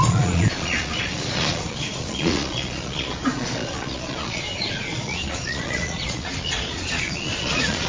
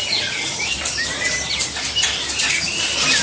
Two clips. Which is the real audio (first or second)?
second